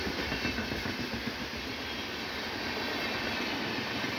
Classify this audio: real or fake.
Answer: real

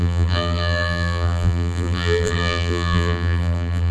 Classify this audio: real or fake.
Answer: fake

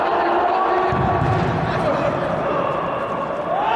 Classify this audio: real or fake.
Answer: fake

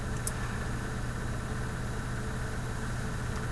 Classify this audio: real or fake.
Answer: real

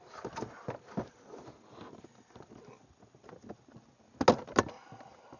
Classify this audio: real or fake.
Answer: real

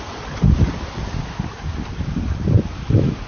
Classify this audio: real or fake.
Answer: real